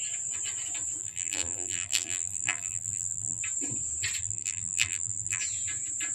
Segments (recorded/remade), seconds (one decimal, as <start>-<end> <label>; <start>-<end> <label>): 0.0-1.0 recorded; 1.0-3.4 remade; 3.4-4.2 recorded; 4.2-5.4 remade; 5.4-6.1 recorded